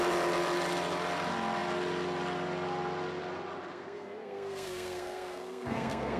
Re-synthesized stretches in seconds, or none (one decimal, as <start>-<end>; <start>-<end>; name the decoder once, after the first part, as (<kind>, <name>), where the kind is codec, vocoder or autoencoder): 3.7-6.2 (codec, SNAC)